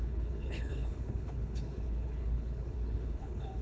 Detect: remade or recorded remade